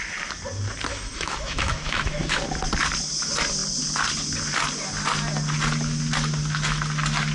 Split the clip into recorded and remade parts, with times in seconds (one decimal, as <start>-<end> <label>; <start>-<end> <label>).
0.0-0.9 recorded; 0.9-2.4 remade; 2.4-7.3 recorded